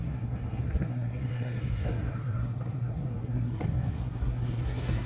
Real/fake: fake